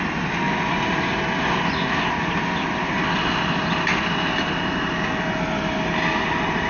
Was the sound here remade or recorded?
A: recorded